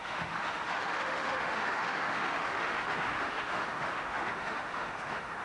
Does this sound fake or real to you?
fake